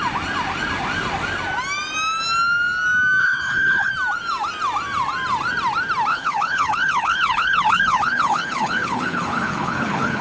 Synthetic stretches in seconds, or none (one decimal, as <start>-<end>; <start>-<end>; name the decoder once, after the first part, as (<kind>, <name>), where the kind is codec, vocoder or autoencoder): 3.2-3.9 (codec, HILCodec); 6.1-10.2

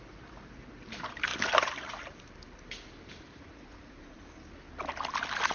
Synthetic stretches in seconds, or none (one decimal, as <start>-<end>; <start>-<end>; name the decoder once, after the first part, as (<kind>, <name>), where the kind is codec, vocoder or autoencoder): 3.3-4.2 (vocoder, Vocos)